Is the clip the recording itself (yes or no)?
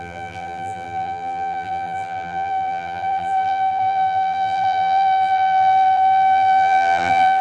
no